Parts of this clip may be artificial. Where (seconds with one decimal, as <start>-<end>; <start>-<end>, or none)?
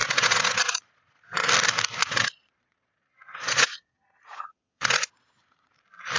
0.0-1.5; 2.0-5.7